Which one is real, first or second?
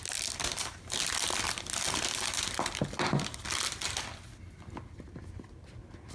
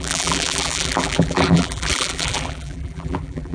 first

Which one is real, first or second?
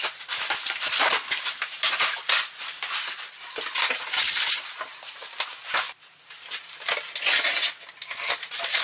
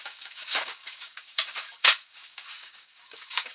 first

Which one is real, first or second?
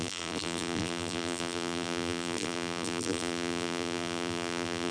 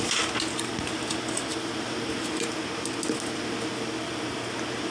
second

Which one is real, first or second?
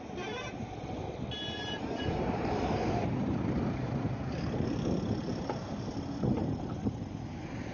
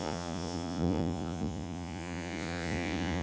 first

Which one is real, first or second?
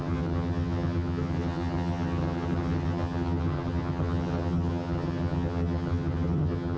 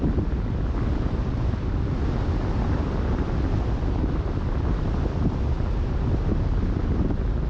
second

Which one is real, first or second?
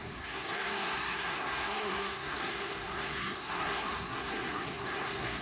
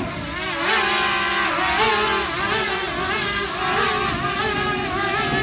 second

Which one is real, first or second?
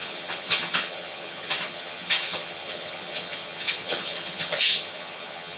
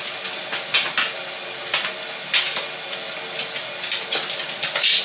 second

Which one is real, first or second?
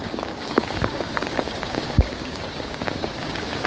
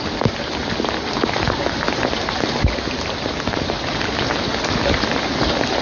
second